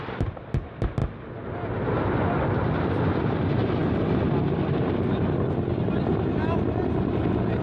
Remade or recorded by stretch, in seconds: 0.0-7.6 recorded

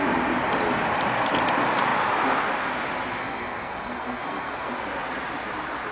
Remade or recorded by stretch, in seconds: 0.0-3.2 recorded; 3.2-4.7 remade; 4.7-5.9 recorded